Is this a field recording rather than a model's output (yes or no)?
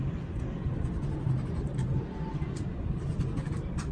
yes